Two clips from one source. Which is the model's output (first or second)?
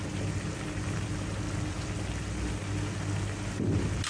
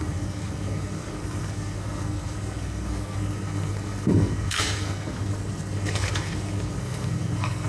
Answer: second